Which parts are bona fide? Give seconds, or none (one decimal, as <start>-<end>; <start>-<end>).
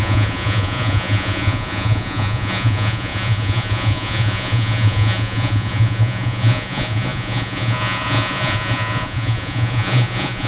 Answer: none